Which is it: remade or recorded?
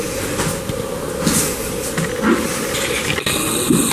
recorded